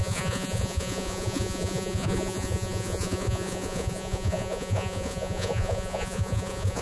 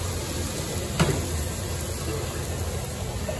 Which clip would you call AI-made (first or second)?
first